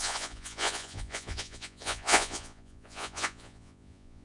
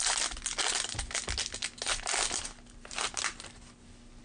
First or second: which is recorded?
second